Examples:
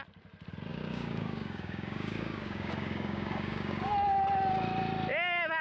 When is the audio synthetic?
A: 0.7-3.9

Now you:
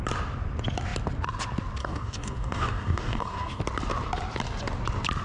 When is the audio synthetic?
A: 1.8-3.6

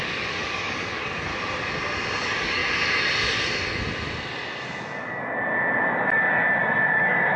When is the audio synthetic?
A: 0.0-1.3; 2.2-2.6; 7.0-7.4

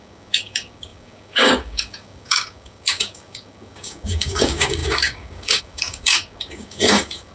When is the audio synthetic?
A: 0.0-7.3

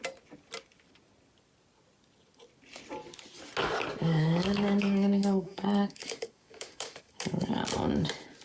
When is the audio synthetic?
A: 4.0-7.6

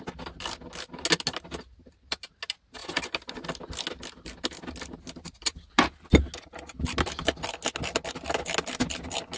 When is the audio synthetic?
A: none

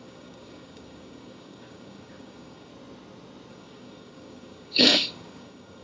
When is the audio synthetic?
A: 0.0-2.7; 3.5-5.8